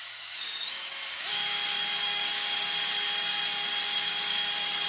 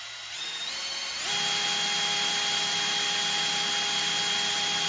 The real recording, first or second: second